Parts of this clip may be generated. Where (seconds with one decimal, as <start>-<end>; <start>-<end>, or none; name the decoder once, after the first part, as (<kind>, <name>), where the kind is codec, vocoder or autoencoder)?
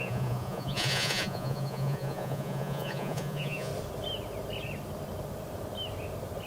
0.0-3.7 (vocoder, Vocos)